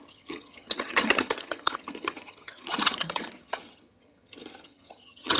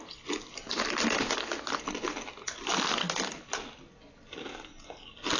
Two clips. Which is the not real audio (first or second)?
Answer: first